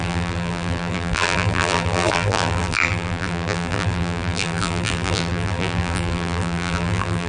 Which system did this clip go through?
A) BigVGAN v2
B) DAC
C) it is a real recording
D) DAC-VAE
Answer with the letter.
A